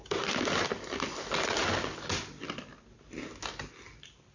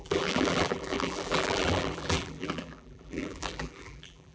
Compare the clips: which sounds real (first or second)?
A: first